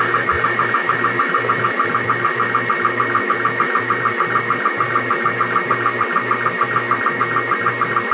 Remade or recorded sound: recorded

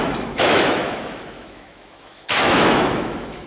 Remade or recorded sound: remade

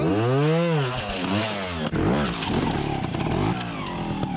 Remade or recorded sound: recorded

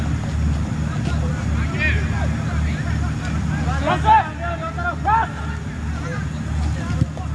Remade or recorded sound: recorded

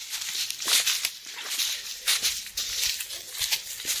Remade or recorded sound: recorded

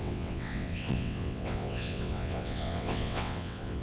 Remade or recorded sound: remade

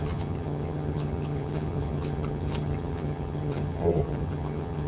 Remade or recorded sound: remade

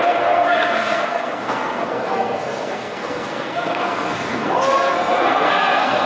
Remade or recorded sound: remade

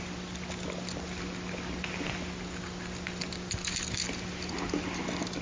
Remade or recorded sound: recorded